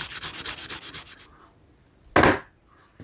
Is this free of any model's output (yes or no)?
yes